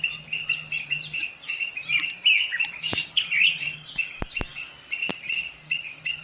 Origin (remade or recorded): recorded